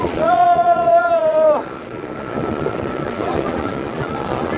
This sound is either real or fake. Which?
fake